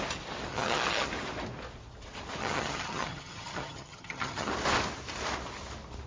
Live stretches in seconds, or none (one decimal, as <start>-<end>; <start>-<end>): 0.0-0.5; 1.1-2.4; 4.5-6.1